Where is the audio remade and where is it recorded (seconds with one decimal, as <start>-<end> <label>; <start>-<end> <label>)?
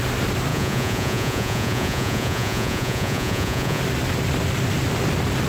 0.0-0.5 recorded; 0.5-3.8 remade; 3.8-5.5 recorded